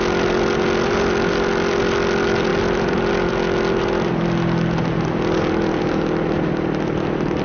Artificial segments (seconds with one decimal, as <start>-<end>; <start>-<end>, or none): none